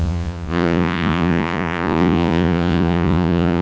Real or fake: fake